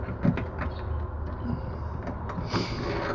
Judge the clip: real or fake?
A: real